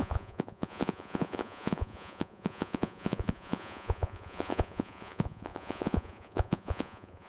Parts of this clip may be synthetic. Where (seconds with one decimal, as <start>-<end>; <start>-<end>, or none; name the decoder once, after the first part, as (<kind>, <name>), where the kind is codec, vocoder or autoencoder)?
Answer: 0.0-7.3 (vocoder, Vocos)